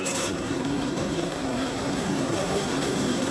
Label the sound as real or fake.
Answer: fake